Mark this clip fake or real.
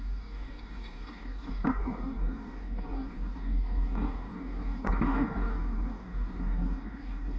fake